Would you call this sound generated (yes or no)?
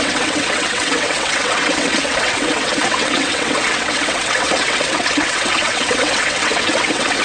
yes